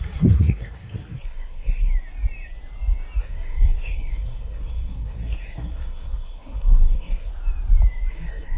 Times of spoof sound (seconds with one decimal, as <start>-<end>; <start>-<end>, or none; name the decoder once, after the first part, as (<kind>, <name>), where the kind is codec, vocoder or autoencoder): 0.0-1.9 (codec, SNAC); 3.2-7.3; 8.1-8.6